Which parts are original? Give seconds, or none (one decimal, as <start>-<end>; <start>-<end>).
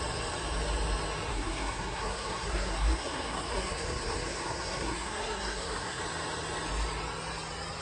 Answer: 0.0-1.3; 6.0-7.8